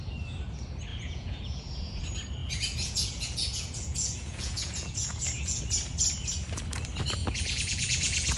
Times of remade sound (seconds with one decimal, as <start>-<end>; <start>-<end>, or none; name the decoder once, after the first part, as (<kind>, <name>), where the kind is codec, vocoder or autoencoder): 0.9-2.0 (vocoder, Vocos); 2.4-5.6; 7.2-8.4